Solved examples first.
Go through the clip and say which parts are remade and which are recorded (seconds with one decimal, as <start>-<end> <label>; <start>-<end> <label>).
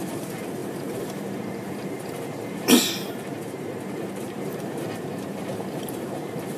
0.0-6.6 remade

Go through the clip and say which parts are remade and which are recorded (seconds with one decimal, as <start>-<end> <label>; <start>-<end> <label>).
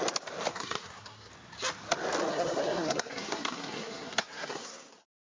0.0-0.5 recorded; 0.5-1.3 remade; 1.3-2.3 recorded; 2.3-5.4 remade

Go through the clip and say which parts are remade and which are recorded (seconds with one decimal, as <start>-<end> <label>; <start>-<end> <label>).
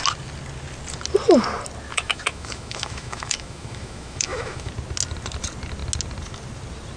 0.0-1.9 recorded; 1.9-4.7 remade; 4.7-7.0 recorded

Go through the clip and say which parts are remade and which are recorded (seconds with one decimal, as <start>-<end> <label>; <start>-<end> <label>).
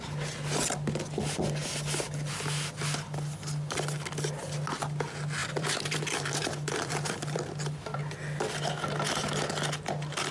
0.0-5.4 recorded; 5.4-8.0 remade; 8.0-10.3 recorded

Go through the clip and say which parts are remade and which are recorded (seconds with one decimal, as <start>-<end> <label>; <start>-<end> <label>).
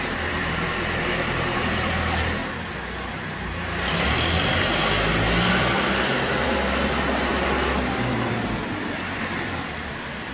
0.0-2.4 remade; 2.4-5.5 recorded; 5.5-10.3 remade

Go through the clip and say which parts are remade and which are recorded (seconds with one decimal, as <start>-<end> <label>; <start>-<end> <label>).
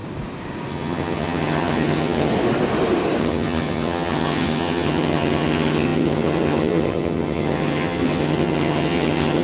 0.0-0.7 recorded; 0.7-2.3 remade; 2.3-3.2 recorded; 3.2-9.4 remade